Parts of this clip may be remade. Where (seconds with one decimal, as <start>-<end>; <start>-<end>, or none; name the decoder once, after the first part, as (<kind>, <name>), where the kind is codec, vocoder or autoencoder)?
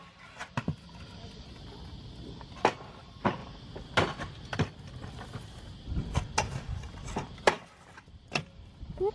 none